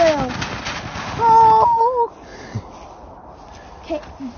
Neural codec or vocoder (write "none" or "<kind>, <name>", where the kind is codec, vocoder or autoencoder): none